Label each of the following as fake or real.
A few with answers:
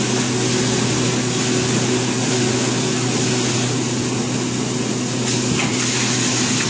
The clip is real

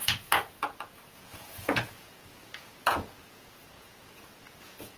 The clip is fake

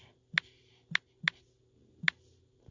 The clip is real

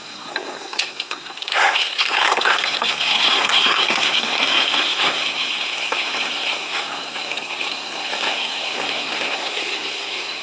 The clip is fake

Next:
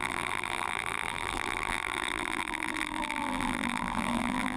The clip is fake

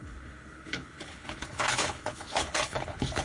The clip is fake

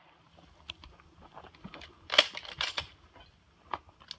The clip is real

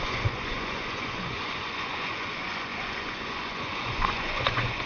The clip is fake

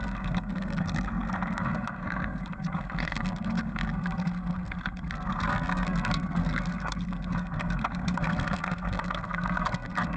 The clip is fake